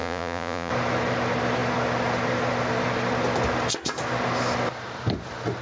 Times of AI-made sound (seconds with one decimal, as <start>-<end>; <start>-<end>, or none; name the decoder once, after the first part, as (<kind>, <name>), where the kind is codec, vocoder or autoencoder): 0.0-0.7 (vocoder, Vocos)

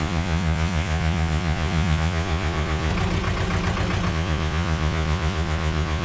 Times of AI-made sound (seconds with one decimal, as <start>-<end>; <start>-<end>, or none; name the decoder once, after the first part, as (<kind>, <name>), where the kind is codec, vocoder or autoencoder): 0.0-2.9 (vocoder, Vocos); 4.1-6.0

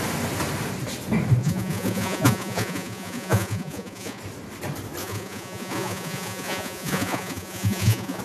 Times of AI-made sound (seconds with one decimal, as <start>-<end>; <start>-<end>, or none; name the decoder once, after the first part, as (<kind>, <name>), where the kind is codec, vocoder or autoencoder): 1.4-4.2 (vocoder, Vocos); 5.0-8.2